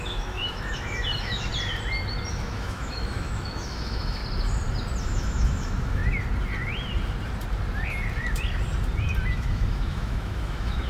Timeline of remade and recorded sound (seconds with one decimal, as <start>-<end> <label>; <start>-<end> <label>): 0.0-1.5 remade; 1.5-2.3 recorded; 2.3-4.2 remade; 4.2-5.0 recorded; 5.0-6.0 remade; 6.0-9.3 recorded; 9.3-10.9 remade